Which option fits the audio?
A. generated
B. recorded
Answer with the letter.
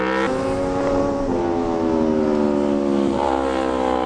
B